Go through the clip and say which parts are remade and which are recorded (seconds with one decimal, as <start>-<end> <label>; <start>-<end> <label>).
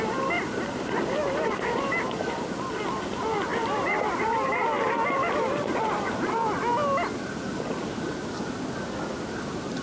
0.0-3.5 recorded; 3.5-6.6 remade; 6.6-9.8 recorded